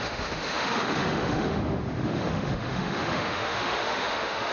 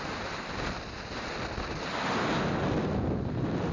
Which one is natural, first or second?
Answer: second